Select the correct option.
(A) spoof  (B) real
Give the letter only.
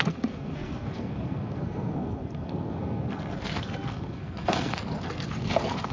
A